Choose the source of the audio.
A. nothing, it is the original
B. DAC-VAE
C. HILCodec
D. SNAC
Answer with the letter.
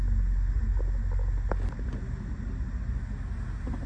A